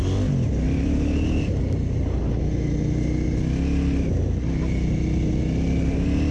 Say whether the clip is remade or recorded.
recorded